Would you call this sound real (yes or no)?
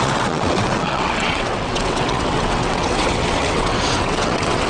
no